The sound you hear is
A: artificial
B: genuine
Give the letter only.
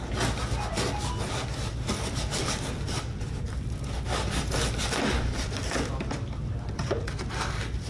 B